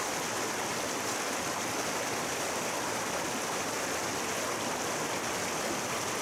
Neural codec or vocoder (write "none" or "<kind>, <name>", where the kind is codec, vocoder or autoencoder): none